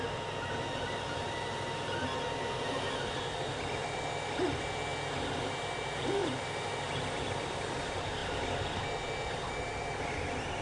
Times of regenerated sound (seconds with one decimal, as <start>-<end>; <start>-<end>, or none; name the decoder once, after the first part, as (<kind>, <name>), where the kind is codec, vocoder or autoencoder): 3.8-4.3 (vocoder, BigVGAN v2); 6.2-7.6; 8.2-8.8